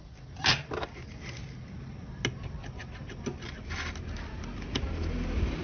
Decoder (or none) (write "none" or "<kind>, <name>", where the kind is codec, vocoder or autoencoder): none